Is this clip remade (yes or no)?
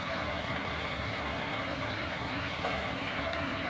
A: yes